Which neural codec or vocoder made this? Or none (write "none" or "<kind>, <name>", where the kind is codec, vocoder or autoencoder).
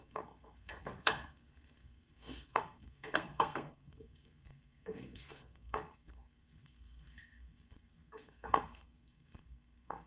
codec, SNAC